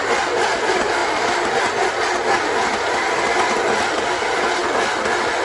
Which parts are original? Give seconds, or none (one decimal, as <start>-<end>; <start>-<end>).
0.0-5.4